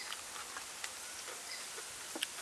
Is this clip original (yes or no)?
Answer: yes